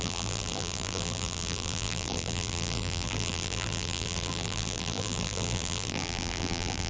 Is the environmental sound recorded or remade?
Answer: remade